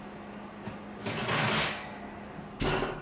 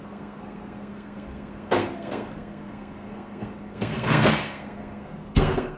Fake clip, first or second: second